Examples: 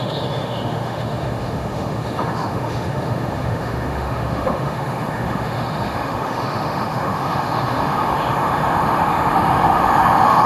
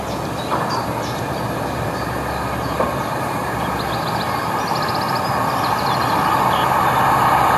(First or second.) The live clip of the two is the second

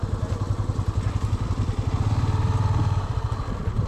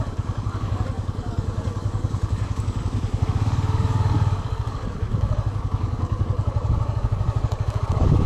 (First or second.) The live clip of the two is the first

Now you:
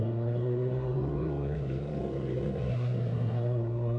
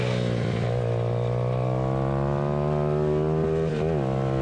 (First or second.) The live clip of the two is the second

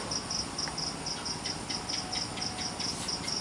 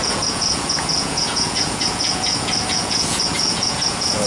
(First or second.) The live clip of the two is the first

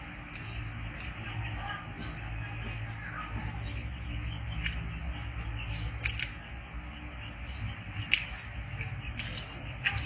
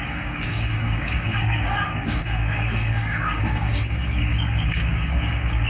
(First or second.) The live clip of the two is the first